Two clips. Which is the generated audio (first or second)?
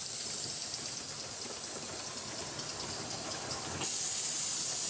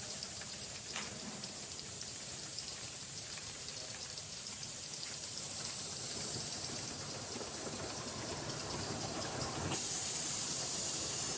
second